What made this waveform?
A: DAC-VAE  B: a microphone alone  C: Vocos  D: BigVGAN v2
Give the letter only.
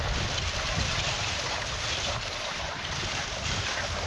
B